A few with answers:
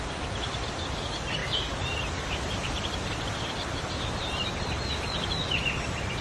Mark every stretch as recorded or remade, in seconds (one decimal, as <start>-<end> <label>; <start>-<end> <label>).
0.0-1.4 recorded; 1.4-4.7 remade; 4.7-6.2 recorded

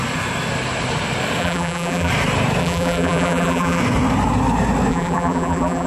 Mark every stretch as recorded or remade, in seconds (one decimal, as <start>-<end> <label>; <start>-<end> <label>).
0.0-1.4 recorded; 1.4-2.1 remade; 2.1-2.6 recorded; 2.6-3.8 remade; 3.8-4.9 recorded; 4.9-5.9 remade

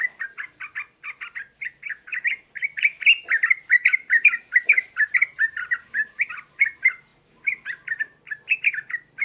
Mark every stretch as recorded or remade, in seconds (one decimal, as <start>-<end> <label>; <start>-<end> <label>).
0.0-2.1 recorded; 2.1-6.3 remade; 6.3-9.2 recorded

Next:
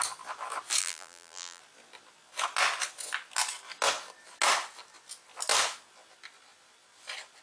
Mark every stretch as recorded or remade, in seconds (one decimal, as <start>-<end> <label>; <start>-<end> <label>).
0.0-0.8 recorded; 0.8-1.6 remade; 1.6-7.4 recorded

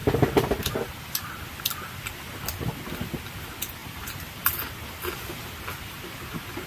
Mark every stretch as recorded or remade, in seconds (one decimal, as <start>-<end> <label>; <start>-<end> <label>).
0.0-6.7 recorded

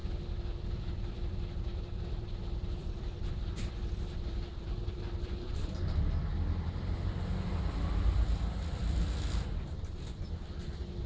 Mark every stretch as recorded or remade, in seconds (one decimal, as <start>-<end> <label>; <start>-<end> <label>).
0.0-0.8 recorded; 0.8-11.1 remade